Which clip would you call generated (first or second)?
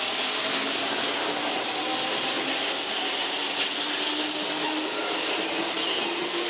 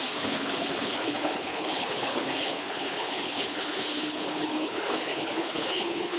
second